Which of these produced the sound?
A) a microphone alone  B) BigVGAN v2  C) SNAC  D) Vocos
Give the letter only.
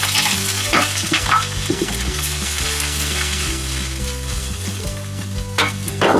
C